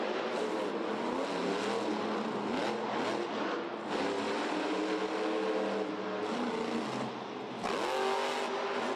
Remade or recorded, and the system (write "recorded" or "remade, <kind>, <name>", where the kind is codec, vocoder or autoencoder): recorded